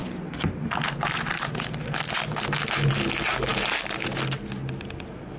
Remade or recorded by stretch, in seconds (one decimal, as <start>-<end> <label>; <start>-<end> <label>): 0.0-5.4 recorded